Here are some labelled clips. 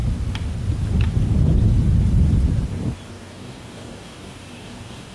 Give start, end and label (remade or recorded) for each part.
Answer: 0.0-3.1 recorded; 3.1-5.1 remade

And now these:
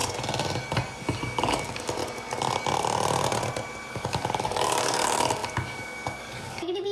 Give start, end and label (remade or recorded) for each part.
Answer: 0.0-1.2 recorded; 1.2-2.0 remade; 2.0-3.9 recorded; 3.9-6.9 remade

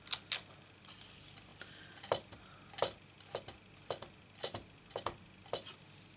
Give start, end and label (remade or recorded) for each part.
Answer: 0.0-6.2 recorded

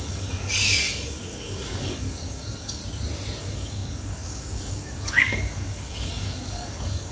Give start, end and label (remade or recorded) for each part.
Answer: 0.0-2.8 remade; 2.8-3.4 recorded; 3.4-7.1 remade

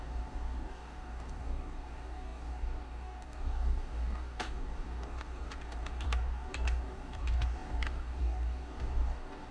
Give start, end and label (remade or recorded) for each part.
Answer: 0.0-9.5 remade

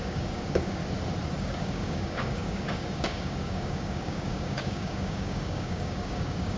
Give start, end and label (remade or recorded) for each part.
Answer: 0.0-0.8 remade; 0.8-1.4 recorded; 1.4-6.6 remade

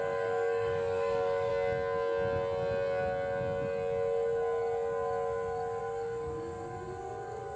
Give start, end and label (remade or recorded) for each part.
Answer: 0.0-1.5 remade; 1.5-5.8 recorded; 5.8-7.6 remade